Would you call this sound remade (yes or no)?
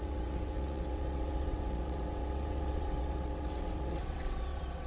yes